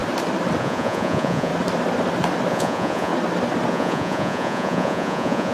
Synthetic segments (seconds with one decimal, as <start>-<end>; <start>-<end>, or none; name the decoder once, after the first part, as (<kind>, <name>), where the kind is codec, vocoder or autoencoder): 0.6-1.5 (vocoder, Vocos); 2.5-3.1; 3.7-5.5